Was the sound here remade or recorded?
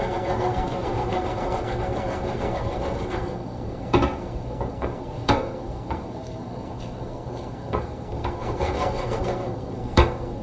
remade